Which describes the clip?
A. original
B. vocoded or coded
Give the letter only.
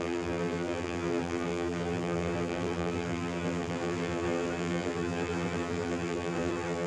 B